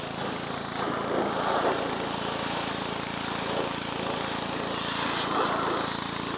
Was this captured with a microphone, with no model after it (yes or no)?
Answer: yes